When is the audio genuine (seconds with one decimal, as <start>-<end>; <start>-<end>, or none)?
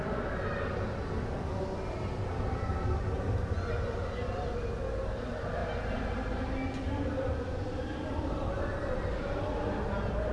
0.0-10.3